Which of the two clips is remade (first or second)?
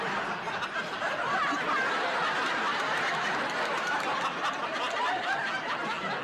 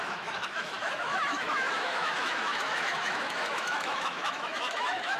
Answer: second